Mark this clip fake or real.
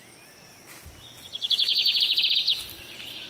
real